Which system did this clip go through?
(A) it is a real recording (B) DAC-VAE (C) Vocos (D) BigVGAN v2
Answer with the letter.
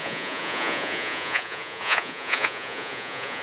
C